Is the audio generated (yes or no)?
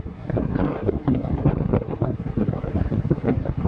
yes